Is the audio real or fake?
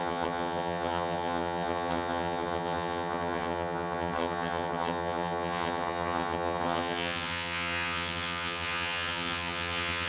fake